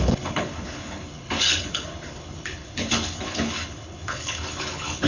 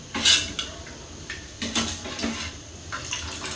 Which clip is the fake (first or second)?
first